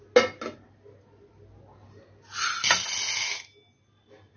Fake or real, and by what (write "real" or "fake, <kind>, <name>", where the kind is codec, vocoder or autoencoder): real